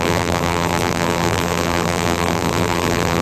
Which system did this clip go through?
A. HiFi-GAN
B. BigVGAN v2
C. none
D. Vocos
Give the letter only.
B